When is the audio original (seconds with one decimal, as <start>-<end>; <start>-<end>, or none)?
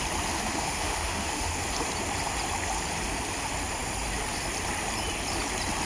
0.0-0.5; 1.6-5.8